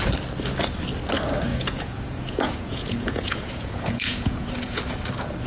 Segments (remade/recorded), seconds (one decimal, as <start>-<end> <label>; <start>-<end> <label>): 0.0-1.5 recorded; 1.5-4.8 remade; 4.8-5.5 recorded